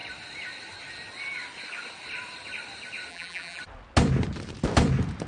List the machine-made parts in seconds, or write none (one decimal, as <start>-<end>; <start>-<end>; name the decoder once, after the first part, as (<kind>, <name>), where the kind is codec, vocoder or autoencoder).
3.1-3.6 (vocoder, BigVGAN v2)